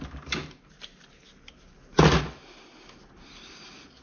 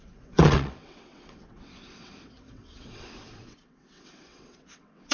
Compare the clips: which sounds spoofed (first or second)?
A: second